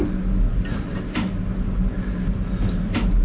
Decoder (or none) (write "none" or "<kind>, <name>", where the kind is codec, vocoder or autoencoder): none